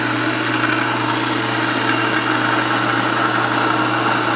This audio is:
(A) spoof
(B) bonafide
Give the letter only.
B